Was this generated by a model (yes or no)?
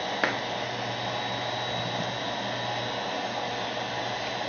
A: no